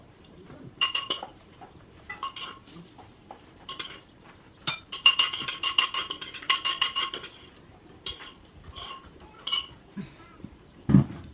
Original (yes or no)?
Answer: no